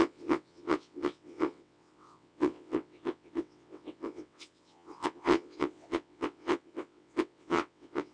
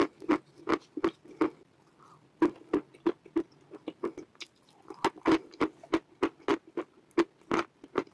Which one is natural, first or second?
second